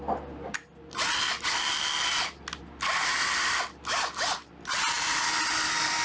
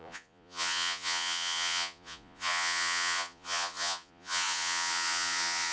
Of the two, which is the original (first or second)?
first